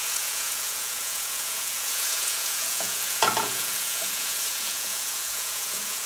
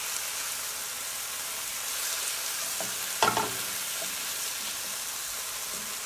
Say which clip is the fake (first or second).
first